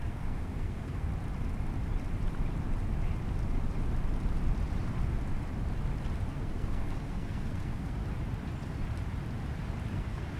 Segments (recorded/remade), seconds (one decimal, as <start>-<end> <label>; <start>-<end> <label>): 0.0-1.1 remade; 1.1-6.3 recorded; 6.3-8.0 remade; 8.0-9.9 recorded; 9.9-10.4 remade